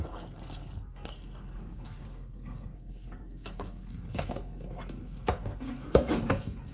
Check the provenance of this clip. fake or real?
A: fake